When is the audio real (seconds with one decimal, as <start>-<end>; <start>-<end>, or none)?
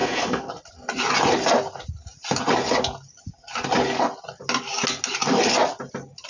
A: 0.5-6.3